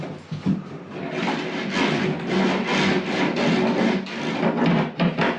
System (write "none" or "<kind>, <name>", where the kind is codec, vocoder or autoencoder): none